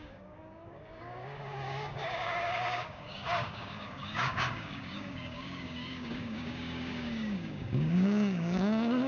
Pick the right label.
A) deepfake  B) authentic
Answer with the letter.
A